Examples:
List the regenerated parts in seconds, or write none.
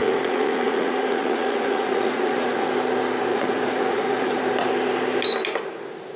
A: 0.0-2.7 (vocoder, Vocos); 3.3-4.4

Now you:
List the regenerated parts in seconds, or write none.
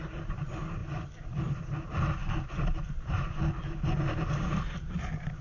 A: none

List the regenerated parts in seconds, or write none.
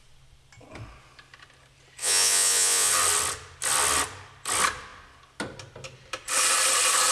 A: 2.0-2.9 (vocoder, Vocos)